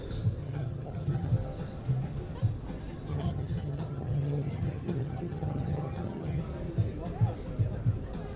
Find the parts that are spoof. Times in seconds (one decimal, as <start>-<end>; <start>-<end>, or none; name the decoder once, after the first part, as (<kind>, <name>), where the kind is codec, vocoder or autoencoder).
0.4-1.3 (vocoder, HiFi-GAN); 3.1-6.4